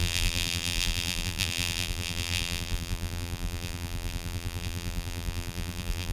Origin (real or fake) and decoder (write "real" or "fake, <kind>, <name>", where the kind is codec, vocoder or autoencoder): fake, vocoder, BigVGAN v2